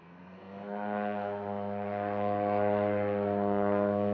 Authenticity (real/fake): fake